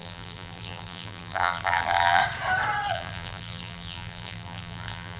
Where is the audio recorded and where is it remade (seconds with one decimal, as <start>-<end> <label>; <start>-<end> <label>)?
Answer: 0.0-2.2 remade; 2.2-2.9 recorded; 2.9-5.2 remade